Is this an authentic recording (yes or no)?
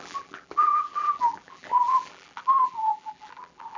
no